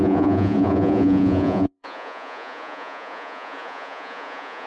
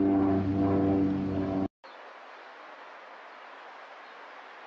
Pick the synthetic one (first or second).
first